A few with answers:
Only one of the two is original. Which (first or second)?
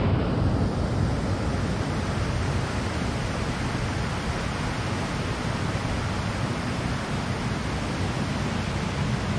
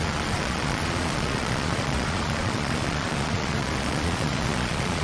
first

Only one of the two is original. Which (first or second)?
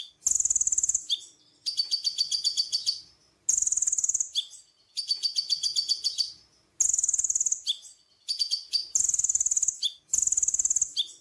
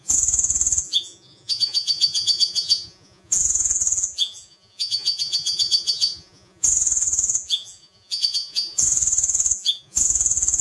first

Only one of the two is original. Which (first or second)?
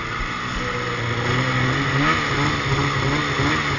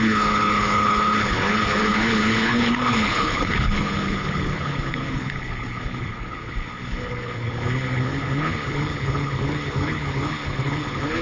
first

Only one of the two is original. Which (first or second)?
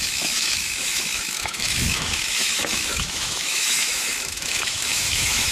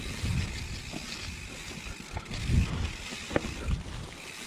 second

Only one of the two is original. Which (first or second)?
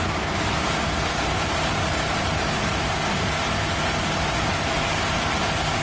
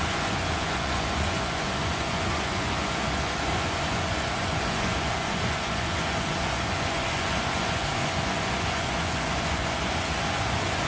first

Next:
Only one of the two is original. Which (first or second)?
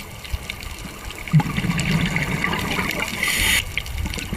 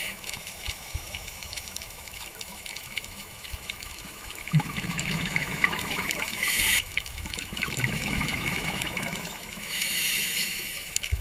first